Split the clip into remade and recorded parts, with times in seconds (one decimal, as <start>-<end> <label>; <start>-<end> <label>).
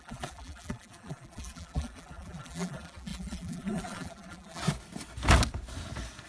0.0-4.6 remade; 4.6-6.3 recorded